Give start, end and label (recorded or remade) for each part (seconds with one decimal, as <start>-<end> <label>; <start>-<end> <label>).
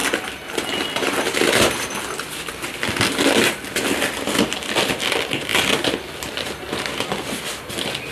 0.0-8.1 recorded